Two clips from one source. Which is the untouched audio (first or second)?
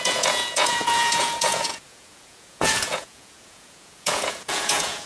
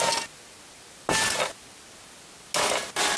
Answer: second